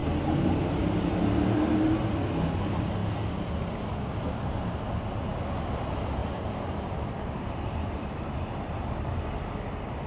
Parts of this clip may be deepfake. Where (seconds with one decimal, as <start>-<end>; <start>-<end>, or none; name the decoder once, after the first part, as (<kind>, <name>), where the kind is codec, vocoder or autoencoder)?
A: 6.2-8.1 (vocoder, BigVGAN v2)